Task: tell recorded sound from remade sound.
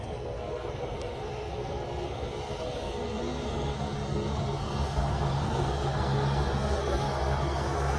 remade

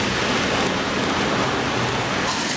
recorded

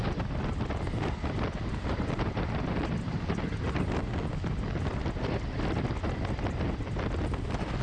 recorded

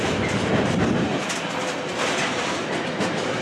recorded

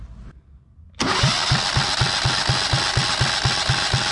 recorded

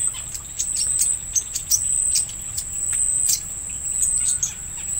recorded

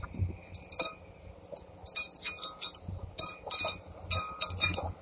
recorded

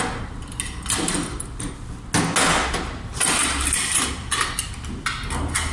recorded